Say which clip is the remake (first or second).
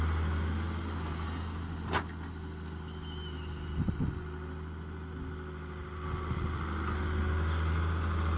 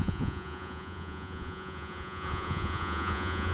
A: second